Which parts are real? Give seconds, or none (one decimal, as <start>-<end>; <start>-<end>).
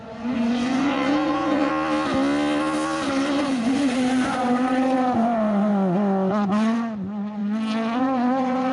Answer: 1.7-3.4; 5.7-6.3; 7.4-8.0